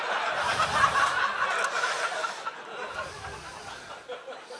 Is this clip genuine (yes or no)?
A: yes